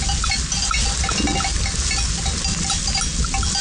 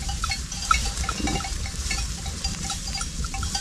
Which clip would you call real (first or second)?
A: first